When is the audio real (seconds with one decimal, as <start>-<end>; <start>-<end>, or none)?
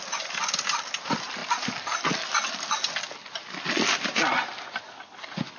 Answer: 0.0-5.6